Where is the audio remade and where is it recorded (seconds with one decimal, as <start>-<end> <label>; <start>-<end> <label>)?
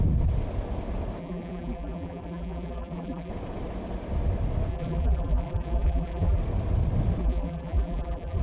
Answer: 0.0-1.2 recorded; 1.2-3.3 remade; 3.3-4.7 recorded; 4.7-6.4 remade; 6.4-7.2 recorded; 7.2-8.4 remade